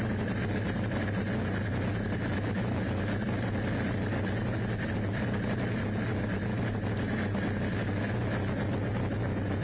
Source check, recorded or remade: recorded